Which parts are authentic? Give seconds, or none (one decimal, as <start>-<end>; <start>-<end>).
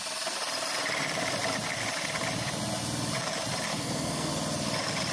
0.0-3.7; 4.3-5.1